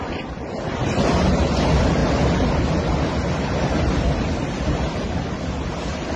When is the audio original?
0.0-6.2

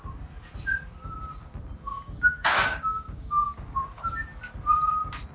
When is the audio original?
0.0-1.9; 4.0-5.3

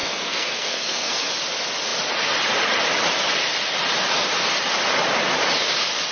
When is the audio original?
1.3-6.1

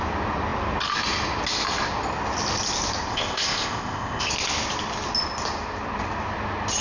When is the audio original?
0.0-3.1; 4.3-6.8

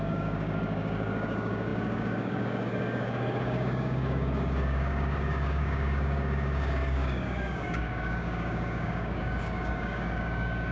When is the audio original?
none